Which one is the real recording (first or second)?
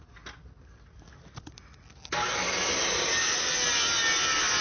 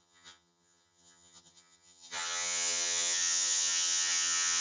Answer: first